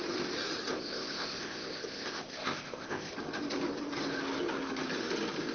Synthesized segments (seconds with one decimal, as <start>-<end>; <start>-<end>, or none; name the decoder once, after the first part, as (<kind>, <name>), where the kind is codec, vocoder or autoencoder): 0.7-3.1 (codec, ZipCodec)